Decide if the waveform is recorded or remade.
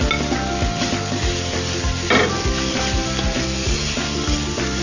recorded